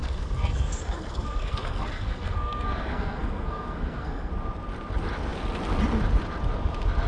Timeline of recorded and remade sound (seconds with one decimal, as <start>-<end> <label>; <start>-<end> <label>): 0.0-4.3 remade; 4.3-7.1 recorded